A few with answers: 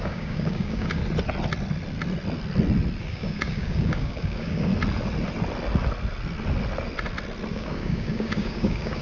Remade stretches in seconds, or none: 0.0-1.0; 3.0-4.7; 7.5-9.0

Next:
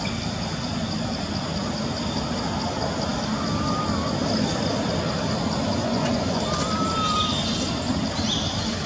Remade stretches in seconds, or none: 5.8-6.4

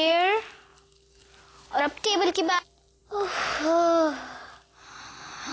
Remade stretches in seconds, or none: none

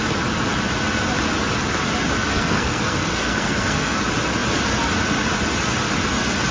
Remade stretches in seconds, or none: 2.3-4.0

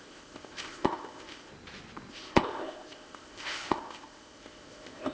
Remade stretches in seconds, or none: 0.0-1.5; 2.1-5.1

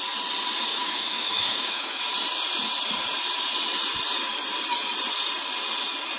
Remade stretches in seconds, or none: 0.7-2.0

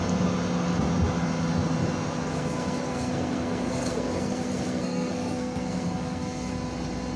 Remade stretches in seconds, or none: 2.2-6.5